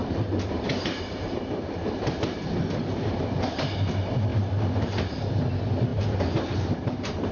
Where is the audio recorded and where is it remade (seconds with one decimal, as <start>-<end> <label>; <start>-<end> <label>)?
0.0-3.6 remade; 3.6-4.3 recorded; 4.3-5.4 remade; 5.4-5.9 recorded; 5.9-7.3 remade